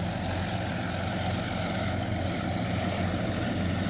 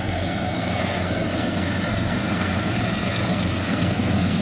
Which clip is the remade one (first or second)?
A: second